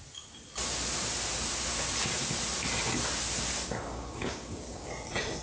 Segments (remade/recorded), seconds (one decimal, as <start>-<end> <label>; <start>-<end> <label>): 0.0-3.9 recorded; 3.9-4.9 remade; 4.9-5.4 recorded